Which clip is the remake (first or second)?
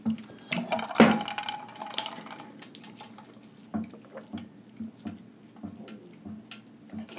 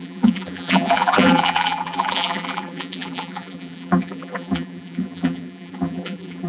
second